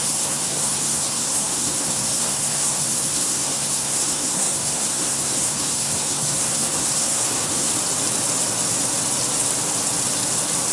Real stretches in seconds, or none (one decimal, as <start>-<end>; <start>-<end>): 7.7-10.7